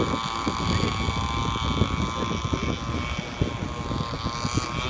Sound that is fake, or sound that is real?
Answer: real